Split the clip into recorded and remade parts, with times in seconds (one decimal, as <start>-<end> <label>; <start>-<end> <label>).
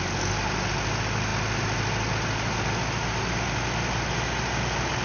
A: 0.0-5.0 recorded